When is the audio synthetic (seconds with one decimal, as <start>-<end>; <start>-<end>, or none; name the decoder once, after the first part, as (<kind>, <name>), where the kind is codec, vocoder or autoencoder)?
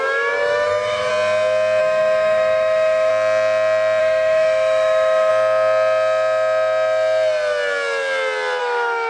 0.0-1.1 (autoencoder, DAC-VAE); 1.8-3.1; 4.0-5.3; 8.6-9.1